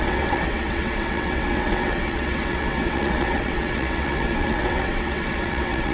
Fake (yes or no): yes